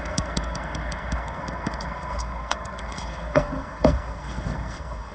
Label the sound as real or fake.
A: fake